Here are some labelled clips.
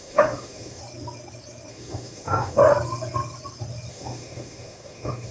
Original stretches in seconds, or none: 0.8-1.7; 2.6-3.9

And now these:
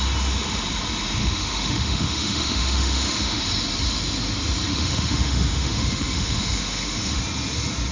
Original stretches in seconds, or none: 0.0-1.2; 3.4-4.7; 7.2-7.9